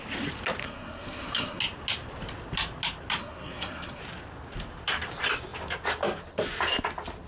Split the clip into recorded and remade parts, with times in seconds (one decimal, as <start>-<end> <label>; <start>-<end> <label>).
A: 0.0-0.6 recorded; 0.6-1.6 remade; 1.6-3.2 recorded; 3.2-4.0 remade; 4.0-7.3 recorded